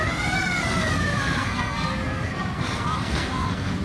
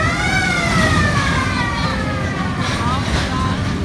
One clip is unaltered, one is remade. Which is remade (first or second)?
first